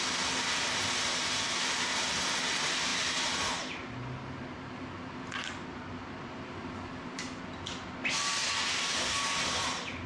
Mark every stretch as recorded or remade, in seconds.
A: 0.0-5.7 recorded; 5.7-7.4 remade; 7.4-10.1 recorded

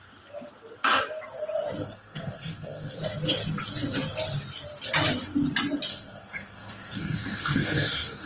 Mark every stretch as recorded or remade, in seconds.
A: 0.0-1.8 recorded; 1.8-3.0 remade; 3.0-5.9 recorded; 5.9-8.3 remade

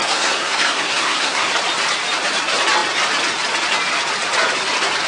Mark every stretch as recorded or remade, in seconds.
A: 0.0-1.5 remade; 1.5-5.1 recorded

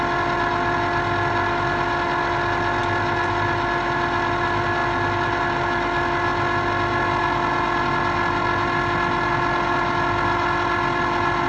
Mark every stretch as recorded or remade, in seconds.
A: 0.0-11.5 recorded

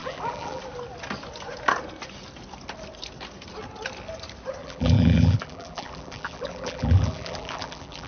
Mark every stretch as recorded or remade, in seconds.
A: 0.0-0.6 remade; 0.6-4.6 recorded; 4.6-8.1 remade

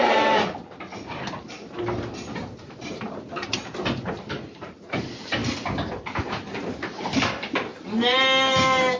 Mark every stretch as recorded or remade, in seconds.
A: 0.0-0.9 remade; 0.9-4.3 recorded; 4.3-5.4 remade; 5.4-6.3 recorded; 6.3-7.7 remade; 7.7-9.0 recorded